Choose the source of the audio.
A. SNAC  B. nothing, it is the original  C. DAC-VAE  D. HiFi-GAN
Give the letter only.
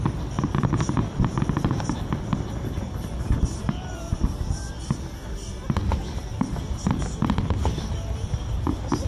B